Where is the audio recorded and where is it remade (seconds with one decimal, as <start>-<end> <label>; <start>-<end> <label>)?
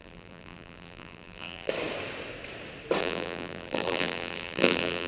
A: 0.0-1.7 remade; 1.7-3.0 recorded; 3.0-5.1 remade